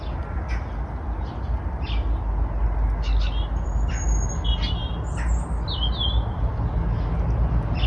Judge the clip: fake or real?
real